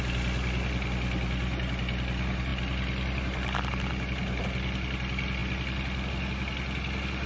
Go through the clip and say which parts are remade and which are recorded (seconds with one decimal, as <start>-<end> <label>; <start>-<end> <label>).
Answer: 0.0-7.3 recorded